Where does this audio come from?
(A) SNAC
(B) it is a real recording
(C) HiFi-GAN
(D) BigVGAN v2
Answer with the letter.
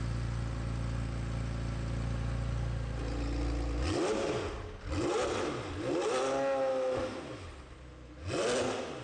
B